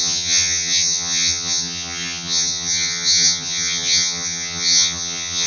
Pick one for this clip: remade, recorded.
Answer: remade